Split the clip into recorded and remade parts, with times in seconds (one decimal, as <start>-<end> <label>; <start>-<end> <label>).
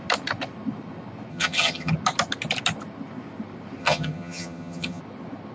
0.0-1.3 recorded; 1.3-1.9 remade; 1.9-3.8 recorded; 3.8-5.0 remade; 5.0-5.5 recorded